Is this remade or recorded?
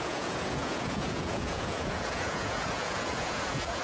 remade